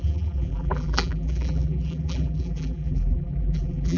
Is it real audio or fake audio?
fake